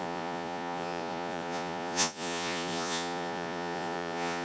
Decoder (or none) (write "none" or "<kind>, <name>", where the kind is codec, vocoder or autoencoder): vocoder, Vocos